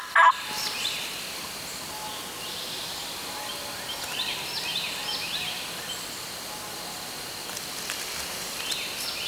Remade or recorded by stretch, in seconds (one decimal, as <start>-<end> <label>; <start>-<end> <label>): 0.0-9.3 recorded